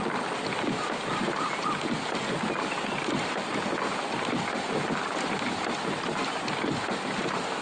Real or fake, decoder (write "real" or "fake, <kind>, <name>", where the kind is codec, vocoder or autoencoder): real